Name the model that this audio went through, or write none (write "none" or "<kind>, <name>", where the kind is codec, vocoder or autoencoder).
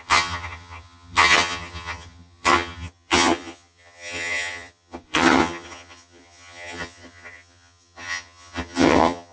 vocoder, HiFi-GAN